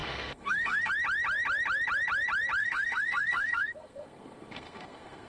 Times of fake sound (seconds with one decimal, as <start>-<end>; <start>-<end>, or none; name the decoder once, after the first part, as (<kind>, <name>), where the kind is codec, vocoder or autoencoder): 0.0-0.9 (codec, SNAC); 2.6-5.3